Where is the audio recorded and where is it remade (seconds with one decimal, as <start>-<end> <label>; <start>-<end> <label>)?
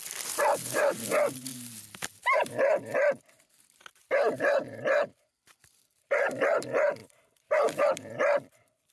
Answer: 0.0-1.5 remade; 1.5-5.7 recorded; 5.7-7.0 remade; 7.0-7.8 recorded; 7.8-8.9 remade